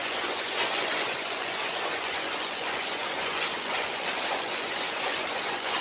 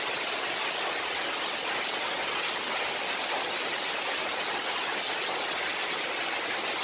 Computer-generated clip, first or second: first